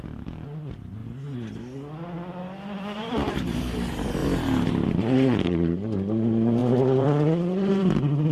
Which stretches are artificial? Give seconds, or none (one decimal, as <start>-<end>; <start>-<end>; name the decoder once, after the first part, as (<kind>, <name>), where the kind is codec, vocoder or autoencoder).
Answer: 0.0-1.0 (vocoder, BigVGAN v2); 2.4-4.2; 4.8-8.3